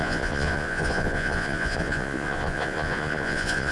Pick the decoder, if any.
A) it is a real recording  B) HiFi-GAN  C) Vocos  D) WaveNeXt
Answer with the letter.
C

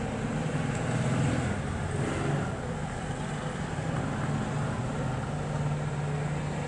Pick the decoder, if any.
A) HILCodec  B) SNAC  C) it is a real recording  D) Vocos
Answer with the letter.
C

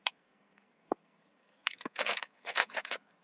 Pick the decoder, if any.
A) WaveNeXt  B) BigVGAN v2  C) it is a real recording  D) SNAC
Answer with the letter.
D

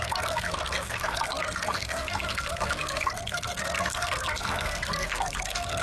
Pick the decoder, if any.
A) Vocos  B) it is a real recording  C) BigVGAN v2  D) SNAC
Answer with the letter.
D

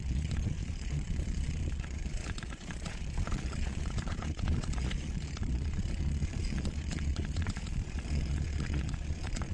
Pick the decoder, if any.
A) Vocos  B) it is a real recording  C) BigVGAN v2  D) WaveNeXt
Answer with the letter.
A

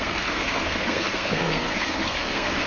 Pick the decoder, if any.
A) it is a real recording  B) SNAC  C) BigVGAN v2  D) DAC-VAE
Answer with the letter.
B